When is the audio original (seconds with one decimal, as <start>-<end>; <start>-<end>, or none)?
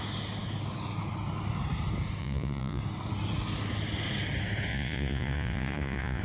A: 0.0-2.2; 2.8-4.7